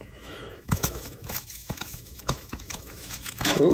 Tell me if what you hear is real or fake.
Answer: fake